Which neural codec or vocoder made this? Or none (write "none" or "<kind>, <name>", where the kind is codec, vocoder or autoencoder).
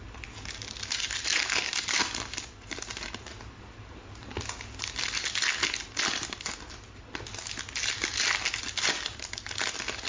none